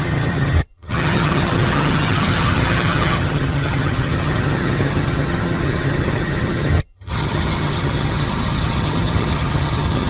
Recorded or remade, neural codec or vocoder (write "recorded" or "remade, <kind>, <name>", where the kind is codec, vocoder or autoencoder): remade, vocoder, HiFi-GAN